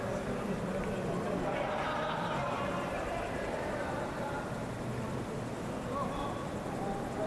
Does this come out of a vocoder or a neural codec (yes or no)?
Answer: no